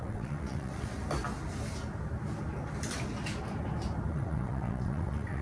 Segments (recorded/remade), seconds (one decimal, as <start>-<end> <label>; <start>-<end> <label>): 0.0-0.9 remade; 0.9-4.1 recorded; 4.1-5.4 remade